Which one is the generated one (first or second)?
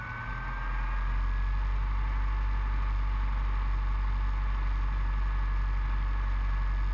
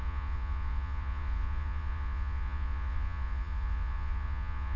second